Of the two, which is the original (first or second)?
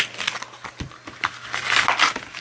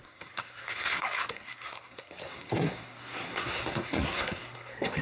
first